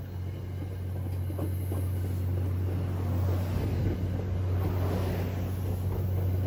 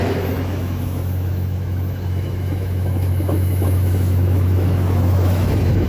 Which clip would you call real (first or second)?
first